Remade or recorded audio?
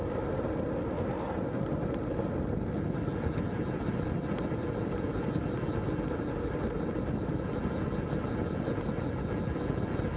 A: recorded